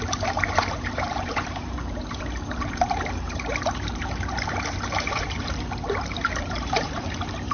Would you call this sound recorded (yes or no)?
no